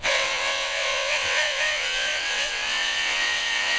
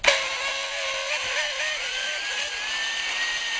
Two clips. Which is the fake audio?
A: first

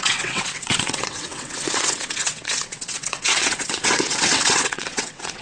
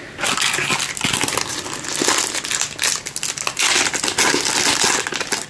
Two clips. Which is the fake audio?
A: first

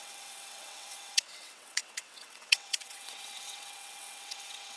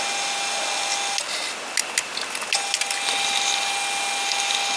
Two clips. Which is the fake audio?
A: first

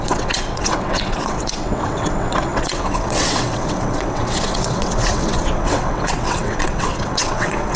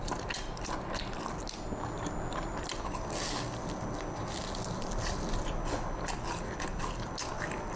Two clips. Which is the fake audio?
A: first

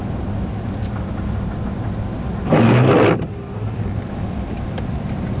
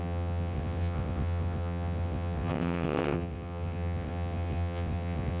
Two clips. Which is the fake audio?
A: second